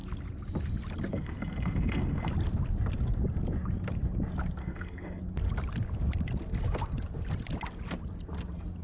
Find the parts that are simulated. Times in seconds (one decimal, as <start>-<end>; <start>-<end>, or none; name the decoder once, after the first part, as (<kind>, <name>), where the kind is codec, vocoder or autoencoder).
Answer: 1.1-2.3 (codec, SNAC); 4.6-5.2